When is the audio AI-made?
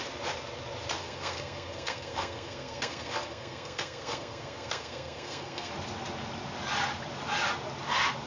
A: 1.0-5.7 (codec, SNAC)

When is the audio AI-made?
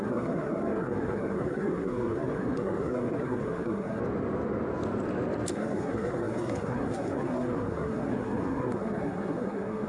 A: 0.0-4.0 (codec, SNAC); 5.5-9.9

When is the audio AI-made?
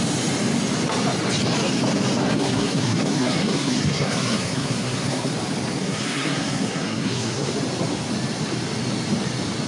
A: 2.2-5.3 (codec, SNAC); 5.8-7.5